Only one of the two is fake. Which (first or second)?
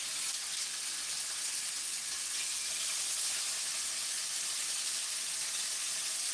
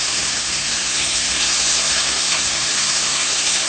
second